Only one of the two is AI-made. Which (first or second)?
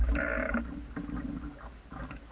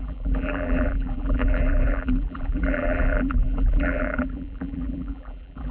second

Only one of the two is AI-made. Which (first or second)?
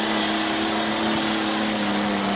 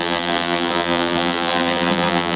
second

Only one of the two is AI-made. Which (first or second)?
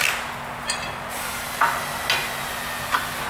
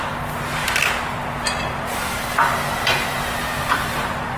second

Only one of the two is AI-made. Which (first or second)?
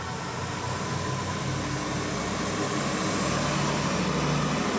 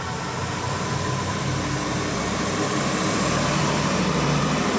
second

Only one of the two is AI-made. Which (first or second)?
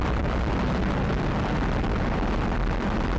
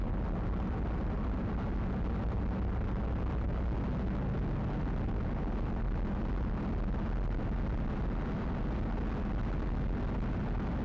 first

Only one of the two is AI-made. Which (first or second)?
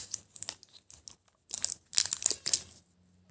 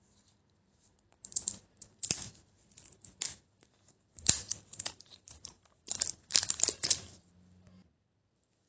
second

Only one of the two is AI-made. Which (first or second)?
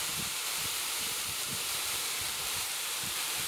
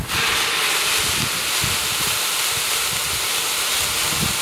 first